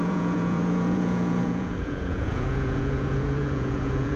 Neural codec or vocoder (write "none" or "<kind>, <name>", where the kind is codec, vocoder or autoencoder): vocoder, Vocos